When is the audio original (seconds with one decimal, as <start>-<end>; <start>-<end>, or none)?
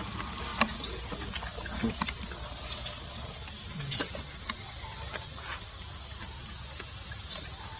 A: 0.0-7.8